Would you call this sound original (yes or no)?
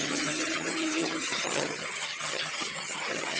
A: no